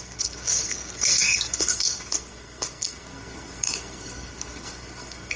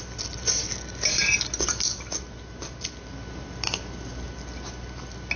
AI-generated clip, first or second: first